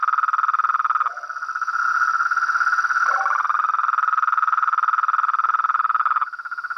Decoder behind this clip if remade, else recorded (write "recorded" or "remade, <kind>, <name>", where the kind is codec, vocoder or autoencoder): recorded